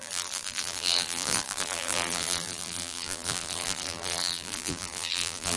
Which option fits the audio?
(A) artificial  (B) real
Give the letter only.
A